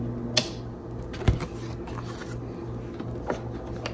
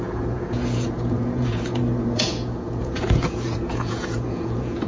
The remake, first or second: second